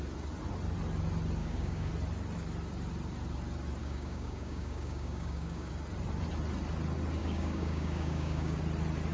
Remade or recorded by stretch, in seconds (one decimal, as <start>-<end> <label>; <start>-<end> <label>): 0.0-1.4 recorded; 1.4-1.9 remade; 1.9-3.8 recorded; 3.8-5.7 remade; 5.7-7.2 recorded; 7.2-8.6 remade; 8.6-9.1 recorded